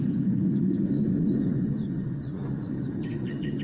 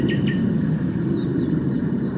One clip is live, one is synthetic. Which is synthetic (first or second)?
first